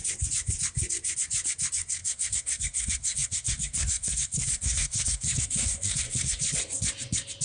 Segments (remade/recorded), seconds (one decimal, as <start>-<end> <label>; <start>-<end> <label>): 0.0-2.0 recorded; 2.0-6.4 remade; 6.4-7.4 recorded